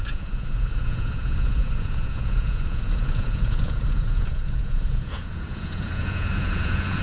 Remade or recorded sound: remade